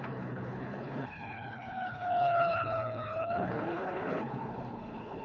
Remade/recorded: remade